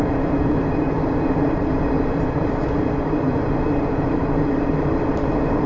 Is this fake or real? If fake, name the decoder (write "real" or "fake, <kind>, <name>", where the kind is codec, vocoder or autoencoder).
fake, vocoder, BigVGAN v2